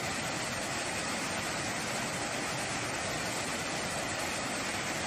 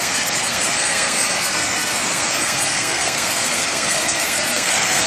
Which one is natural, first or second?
first